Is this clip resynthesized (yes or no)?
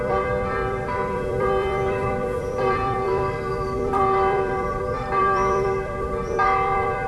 yes